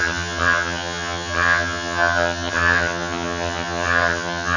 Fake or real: fake